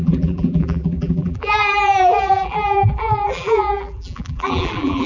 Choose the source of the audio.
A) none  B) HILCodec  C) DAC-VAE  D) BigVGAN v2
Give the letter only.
D